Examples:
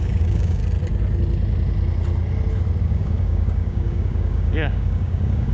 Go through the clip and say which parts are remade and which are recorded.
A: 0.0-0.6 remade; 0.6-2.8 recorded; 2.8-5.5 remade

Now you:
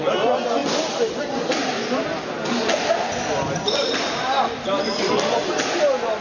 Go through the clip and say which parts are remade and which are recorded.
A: 0.0-6.2 recorded